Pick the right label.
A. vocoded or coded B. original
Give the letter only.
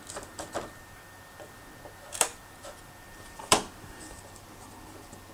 A